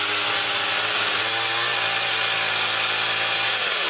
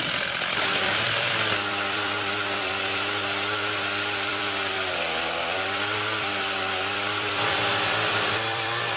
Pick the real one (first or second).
first